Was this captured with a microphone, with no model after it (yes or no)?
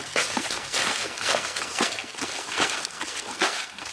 no